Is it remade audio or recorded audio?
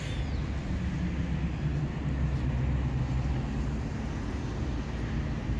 recorded